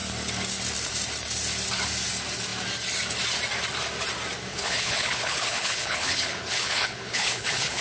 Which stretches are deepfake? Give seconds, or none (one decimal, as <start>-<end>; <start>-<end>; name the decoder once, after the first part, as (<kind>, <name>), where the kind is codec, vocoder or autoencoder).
4.5-7.8 (codec, HILCodec)